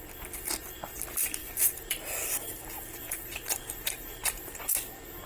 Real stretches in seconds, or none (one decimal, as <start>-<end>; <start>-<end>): 0.0-1.4; 4.6-5.3